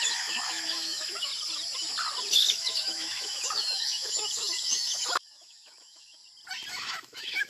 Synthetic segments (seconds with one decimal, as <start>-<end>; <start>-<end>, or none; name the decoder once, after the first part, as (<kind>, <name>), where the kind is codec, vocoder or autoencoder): 0.0-1.3 (autoencoder, DAC-VAE); 2.3-6.2; 6.7-7.5